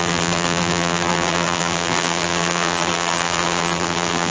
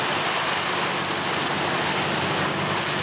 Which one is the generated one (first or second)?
first